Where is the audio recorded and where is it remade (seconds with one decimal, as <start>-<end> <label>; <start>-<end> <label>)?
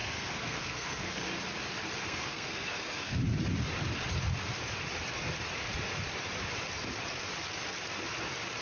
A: 0.0-1.3 remade; 1.3-2.0 recorded; 2.0-3.2 remade; 3.2-8.6 recorded